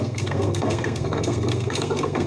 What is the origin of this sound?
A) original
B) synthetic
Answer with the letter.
B